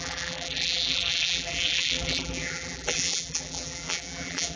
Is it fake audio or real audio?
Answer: fake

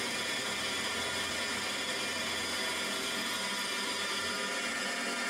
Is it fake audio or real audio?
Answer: real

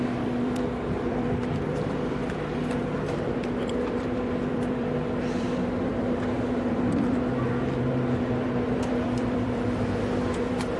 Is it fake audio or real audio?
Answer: fake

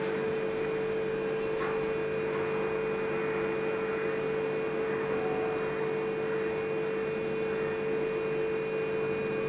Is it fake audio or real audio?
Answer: real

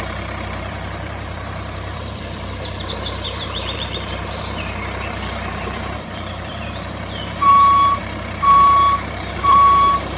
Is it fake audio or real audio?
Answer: fake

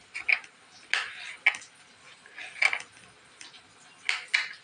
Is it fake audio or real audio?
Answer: real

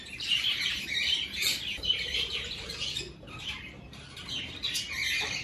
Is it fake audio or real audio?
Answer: fake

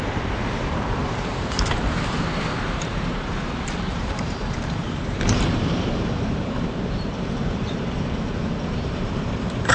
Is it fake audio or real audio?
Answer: fake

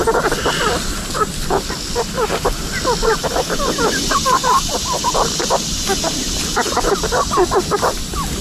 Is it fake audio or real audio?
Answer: real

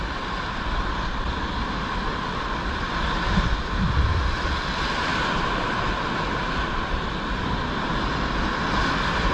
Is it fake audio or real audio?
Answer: real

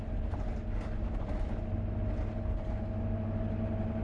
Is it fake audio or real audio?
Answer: real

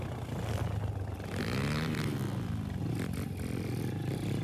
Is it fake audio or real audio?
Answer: real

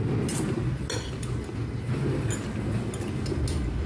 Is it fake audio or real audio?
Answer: real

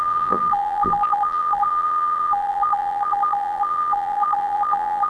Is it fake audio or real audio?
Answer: fake